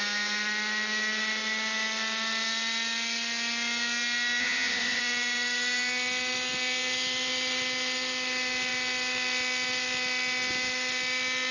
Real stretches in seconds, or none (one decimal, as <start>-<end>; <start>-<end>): 0.0-4.4; 5.0-11.5